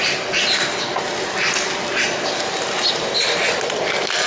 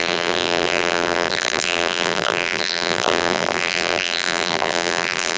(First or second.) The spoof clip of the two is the second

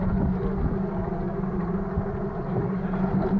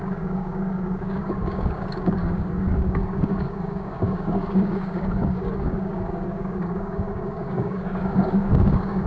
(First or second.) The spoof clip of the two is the second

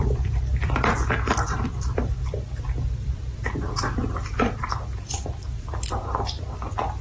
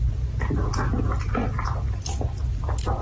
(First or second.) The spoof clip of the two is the first